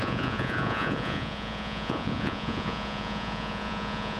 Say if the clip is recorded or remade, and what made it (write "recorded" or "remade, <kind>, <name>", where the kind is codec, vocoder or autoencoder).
remade, vocoder, Vocos